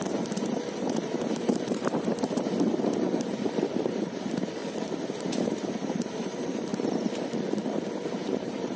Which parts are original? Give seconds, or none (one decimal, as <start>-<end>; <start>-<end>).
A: 4.6-5.2; 6.7-8.1